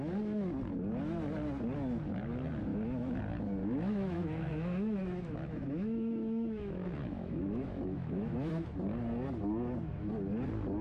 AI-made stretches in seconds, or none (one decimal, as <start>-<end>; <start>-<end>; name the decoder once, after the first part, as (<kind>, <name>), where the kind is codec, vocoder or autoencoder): 2.7-3.2 (autoencoder, DAC-VAE); 3.6-8.5